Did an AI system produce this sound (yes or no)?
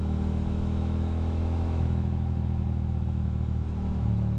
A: yes